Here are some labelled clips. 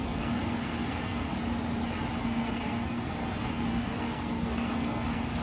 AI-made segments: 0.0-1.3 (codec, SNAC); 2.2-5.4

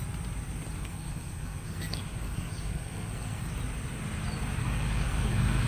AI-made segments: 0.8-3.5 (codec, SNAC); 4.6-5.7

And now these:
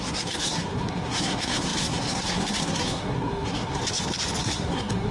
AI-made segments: 0.0-3.8 (codec, SNAC); 4.4-5.1

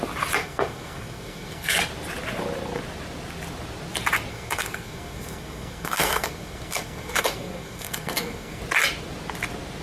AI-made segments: 0.4-1.8 (codec, SNAC); 4.3-8.6

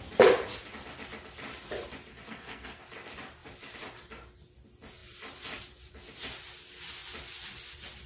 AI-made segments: 2.1-2.8 (codec, SNAC)

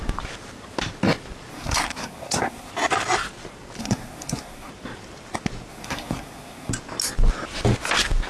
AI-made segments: 1.5-2.7 (codec, SNAC); 3.8-4.7; 5.7-6.7

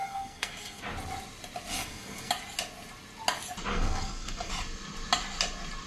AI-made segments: 0.0-0.8 (codec, SNAC); 1.7-2.3; 3.7-4.5